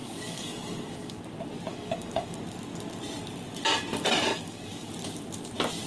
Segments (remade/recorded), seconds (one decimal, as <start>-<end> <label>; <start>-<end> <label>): 0.0-1.2 remade; 1.2-1.7 recorded; 1.7-2.4 remade; 2.4-4.3 recorded; 4.3-4.9 remade; 4.9-5.9 recorded